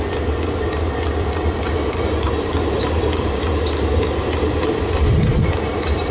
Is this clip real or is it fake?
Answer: real